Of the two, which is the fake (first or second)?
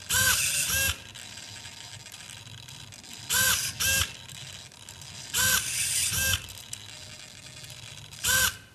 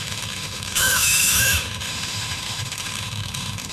second